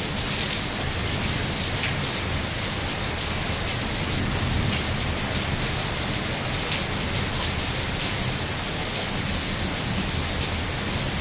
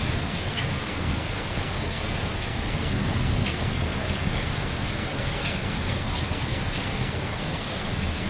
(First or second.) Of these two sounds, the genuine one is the first